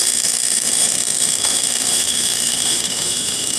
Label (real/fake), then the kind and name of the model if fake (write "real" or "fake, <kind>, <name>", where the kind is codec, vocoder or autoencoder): fake, autoencoder, DAC-VAE